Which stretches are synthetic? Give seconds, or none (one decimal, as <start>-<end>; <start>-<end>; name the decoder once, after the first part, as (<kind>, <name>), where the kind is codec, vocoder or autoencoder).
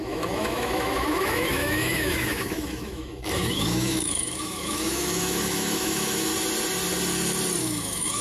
0.0-6.3 (autoencoder, DAC-VAE); 7.6-8.2